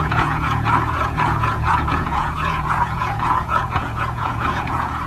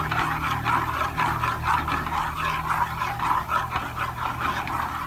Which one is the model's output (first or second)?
first